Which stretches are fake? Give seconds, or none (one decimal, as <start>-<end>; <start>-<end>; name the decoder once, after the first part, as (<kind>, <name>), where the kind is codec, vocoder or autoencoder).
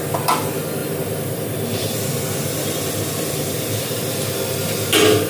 0.8-4.0 (vocoder, BigVGAN v2)